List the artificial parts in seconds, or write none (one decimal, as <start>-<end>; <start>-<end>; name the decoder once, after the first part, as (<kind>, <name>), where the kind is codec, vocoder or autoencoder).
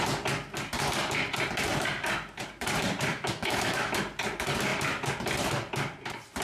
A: 3.1-4.0 (autoencoder, DAC-VAE)